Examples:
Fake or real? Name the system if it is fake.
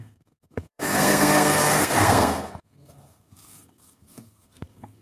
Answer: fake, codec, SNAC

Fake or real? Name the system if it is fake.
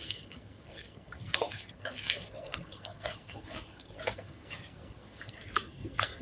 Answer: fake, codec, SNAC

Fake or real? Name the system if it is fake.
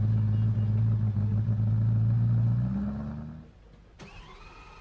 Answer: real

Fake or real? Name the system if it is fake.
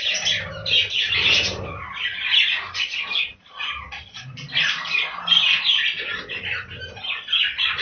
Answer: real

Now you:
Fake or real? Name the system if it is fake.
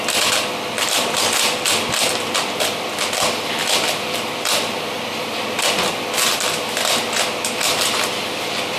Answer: real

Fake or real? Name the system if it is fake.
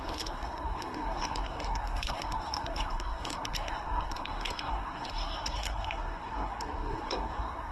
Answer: fake, codec, SNAC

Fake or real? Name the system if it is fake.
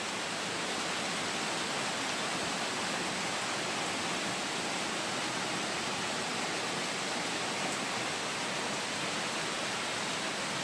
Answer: real